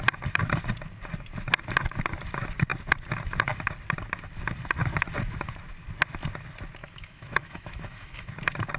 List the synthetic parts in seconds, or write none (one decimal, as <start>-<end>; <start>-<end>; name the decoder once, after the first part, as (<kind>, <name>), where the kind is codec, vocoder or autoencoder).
6.8-8.3 (autoencoder, DAC-VAE)